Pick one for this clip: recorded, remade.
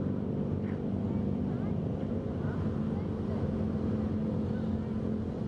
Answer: recorded